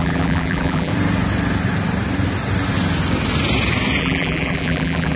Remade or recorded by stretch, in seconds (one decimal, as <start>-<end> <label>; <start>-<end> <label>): 0.0-0.9 remade; 0.9-4.0 recorded; 4.0-5.2 remade